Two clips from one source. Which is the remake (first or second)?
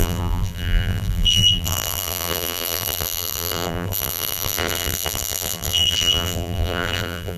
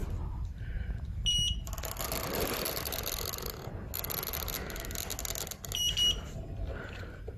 first